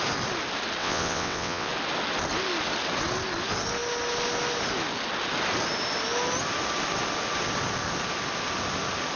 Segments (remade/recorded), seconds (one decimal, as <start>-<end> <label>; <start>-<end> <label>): 0.0-0.8 recorded; 0.8-1.7 remade; 1.7-9.2 recorded